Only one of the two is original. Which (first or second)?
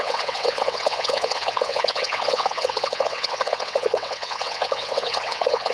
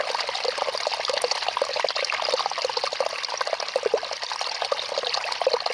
second